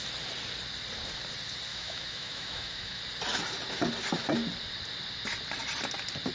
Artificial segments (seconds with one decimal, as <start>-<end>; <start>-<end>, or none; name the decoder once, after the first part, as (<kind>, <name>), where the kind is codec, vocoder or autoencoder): 1.7-3.0 (autoencoder, DAC-VAE)